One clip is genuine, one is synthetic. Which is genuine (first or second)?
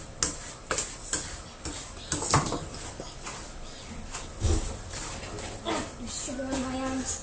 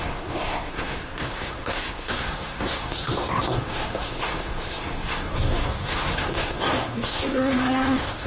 first